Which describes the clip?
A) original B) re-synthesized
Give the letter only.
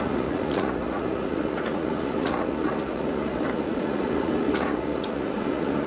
B